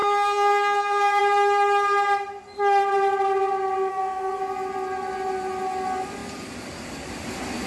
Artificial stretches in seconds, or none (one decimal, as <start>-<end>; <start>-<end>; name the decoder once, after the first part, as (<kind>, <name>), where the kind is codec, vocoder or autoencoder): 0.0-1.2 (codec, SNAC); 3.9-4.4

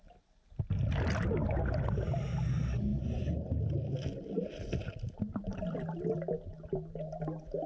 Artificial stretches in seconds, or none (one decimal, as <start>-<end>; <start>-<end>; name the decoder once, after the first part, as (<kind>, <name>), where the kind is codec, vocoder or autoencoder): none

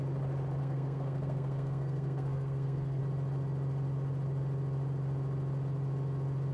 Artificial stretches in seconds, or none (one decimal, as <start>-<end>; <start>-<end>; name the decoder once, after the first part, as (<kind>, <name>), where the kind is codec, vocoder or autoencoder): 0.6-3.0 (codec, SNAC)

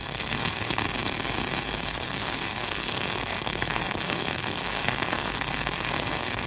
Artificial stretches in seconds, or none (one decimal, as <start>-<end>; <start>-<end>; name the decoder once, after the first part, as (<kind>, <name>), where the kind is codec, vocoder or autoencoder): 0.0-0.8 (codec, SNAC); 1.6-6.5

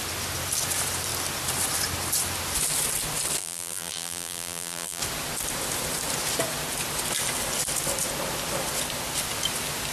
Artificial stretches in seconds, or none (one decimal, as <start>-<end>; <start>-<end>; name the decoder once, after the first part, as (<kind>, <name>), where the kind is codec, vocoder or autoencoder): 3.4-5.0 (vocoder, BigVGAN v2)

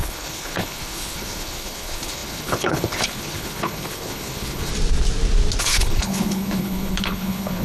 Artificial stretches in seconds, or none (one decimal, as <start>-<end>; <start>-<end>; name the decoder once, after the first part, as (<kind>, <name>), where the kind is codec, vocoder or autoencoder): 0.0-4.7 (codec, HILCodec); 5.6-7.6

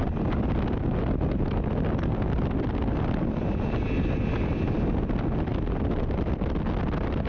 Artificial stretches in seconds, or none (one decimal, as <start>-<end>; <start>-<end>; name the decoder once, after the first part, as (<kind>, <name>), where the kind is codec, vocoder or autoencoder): none

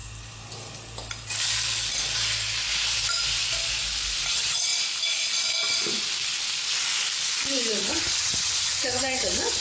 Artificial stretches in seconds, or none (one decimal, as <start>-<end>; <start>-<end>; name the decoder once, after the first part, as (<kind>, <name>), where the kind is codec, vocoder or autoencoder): 4.3-4.7 (vocoder, HiFi-GAN); 7.9-9.6